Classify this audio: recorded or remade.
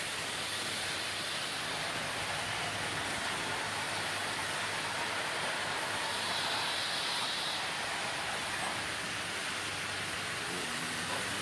recorded